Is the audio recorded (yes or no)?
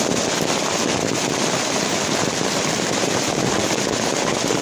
yes